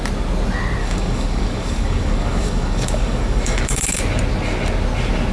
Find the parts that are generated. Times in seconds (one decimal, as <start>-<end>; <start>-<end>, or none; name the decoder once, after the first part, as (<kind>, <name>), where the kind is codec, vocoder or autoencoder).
0.8-4.0 (codec, DAC)